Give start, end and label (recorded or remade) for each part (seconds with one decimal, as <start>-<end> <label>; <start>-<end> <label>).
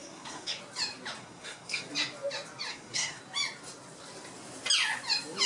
0.0-0.6 remade; 0.6-1.2 recorded; 1.2-1.9 remade; 1.9-2.7 recorded; 2.7-3.2 remade; 3.2-5.5 recorded